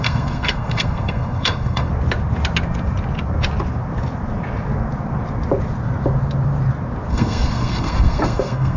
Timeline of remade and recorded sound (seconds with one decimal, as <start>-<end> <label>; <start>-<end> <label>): 0.0-1.9 remade; 1.9-7.1 recorded; 7.1-8.8 remade